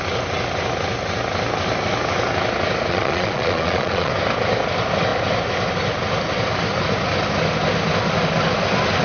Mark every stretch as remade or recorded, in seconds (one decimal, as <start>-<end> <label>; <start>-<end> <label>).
0.0-2.9 recorded; 2.9-4.1 remade; 4.1-9.0 recorded